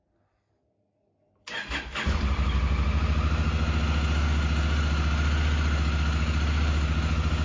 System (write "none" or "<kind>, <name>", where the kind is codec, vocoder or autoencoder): none